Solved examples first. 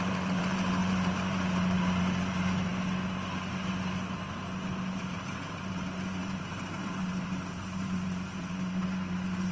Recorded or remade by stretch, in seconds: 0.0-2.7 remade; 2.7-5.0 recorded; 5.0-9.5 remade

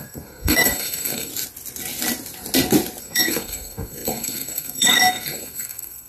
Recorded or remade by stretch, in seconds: 0.0-1.3 remade; 1.3-3.0 recorded; 3.0-6.1 remade

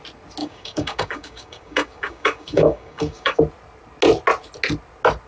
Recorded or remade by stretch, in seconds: 0.0-0.4 recorded; 0.4-3.4 remade; 3.4-5.3 recorded

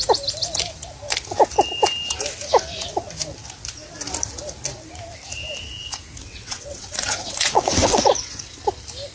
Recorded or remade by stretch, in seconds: 0.0-6.2 recorded; 6.2-8.4 remade; 8.4-9.1 recorded

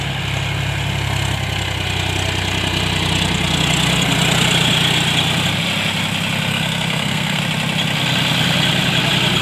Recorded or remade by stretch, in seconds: 0.0-6.5 recorded; 6.5-7.4 remade; 7.4-9.4 recorded

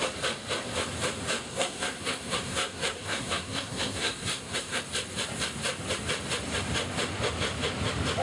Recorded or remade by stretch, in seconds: 0.0-1.5 recorded; 1.5-4.8 remade; 4.8-8.2 recorded

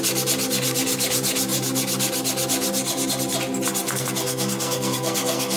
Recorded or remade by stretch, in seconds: 0.0-3.8 recorded; 3.8-5.6 remade

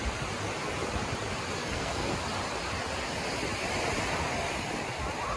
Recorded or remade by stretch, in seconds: 0.0-1.6 recorded; 1.6-2.1 remade; 2.1-5.4 recorded